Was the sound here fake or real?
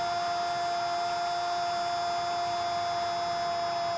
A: real